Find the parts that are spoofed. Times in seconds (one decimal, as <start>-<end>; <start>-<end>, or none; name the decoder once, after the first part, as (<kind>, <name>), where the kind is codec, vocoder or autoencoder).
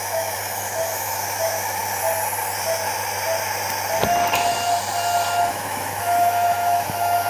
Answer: 0.0-1.8 (autoencoder, DAC-VAE); 5.5-7.3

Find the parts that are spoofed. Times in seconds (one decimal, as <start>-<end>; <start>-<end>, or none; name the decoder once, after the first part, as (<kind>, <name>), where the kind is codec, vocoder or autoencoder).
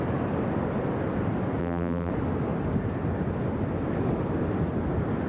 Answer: 1.6-2.1 (vocoder, BigVGAN v2)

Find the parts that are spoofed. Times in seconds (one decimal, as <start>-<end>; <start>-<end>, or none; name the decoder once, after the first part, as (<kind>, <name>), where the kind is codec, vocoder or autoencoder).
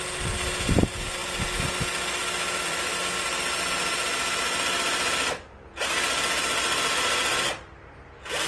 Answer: none